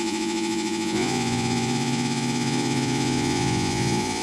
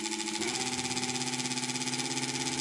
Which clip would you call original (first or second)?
second